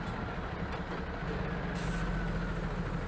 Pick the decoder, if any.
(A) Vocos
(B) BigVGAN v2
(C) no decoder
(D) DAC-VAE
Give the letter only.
C